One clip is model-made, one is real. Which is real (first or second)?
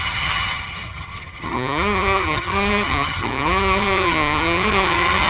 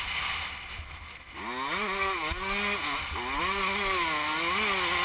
second